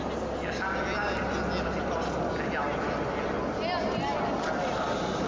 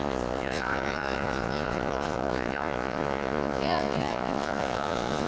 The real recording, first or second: first